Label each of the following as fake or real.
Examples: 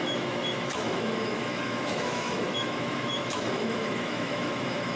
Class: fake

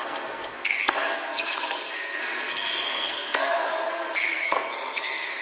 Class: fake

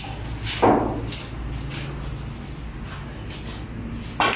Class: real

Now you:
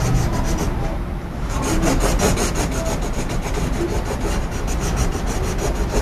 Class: real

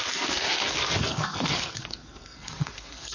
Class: fake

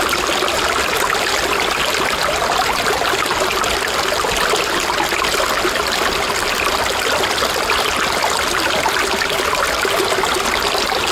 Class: real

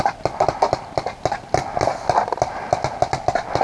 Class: real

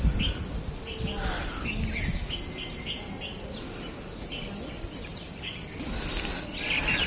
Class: real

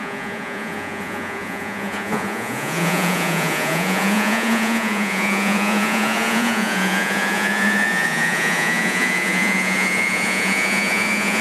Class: fake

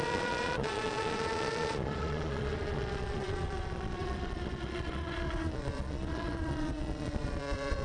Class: fake